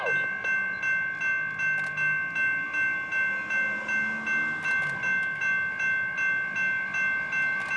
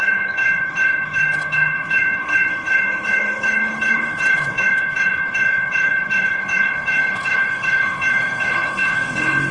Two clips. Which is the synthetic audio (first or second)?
second